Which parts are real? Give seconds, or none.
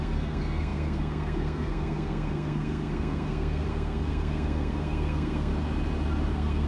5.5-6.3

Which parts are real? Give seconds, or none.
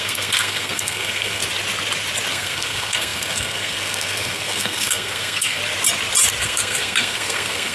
1.4-2.3; 5.6-6.4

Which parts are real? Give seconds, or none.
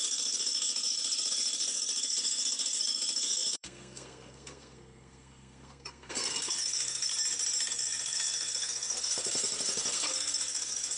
7.1-7.7